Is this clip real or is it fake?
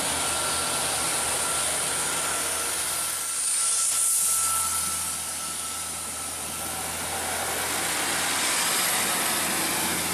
real